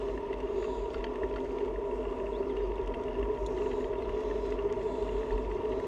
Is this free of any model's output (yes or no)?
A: yes